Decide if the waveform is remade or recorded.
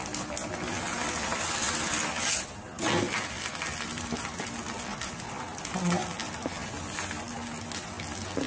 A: recorded